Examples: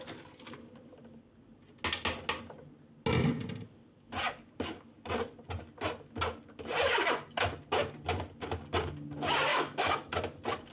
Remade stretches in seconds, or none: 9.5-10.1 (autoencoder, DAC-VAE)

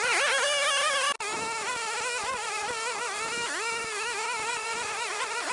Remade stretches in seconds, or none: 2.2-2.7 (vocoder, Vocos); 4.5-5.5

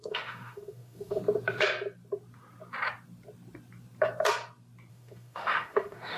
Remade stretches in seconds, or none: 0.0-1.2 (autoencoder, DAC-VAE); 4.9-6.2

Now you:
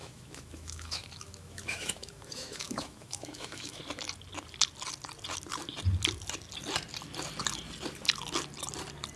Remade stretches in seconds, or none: 0.0-3.8 (autoencoder, DAC-VAE)

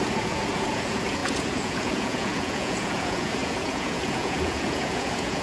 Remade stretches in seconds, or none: 0.0-5.4 (vocoder, Vocos)